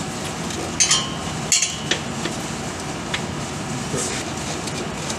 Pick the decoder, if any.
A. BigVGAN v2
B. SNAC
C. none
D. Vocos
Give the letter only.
C